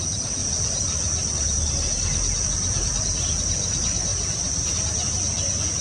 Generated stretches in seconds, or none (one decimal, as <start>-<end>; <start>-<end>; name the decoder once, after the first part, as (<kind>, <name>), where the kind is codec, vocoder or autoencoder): 4.1-4.7 (vocoder, BigVGAN v2)